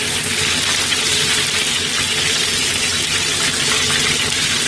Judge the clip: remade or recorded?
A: recorded